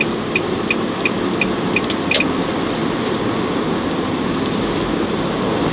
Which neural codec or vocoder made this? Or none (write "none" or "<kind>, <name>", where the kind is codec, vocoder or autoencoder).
none